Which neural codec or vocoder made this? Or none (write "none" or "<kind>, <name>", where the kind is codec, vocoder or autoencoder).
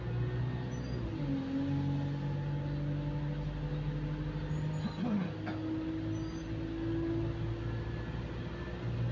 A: none